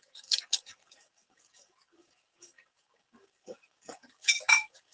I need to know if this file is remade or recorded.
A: remade